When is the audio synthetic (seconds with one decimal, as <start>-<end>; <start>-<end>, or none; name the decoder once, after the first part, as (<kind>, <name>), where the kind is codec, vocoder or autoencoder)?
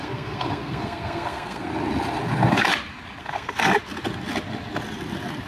0.0-1.7 (codec, SNAC); 3.2-3.7